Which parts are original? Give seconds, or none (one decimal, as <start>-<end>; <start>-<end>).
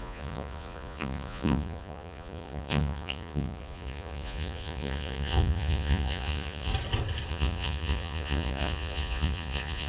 6.7-7.3